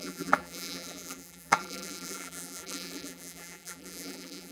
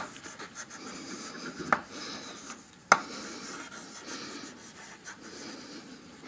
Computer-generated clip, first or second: first